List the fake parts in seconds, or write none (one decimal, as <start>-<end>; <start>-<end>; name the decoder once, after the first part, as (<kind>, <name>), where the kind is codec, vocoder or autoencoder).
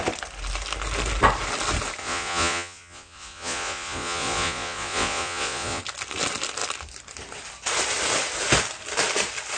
2.0-5.8 (vocoder, Vocos)